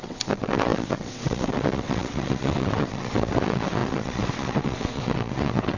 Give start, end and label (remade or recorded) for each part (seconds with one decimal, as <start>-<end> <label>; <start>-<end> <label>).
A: 0.0-5.8 remade